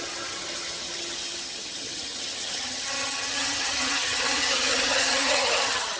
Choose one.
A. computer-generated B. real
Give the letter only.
A